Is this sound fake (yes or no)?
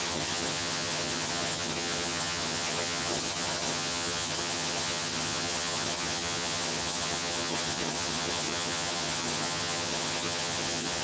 yes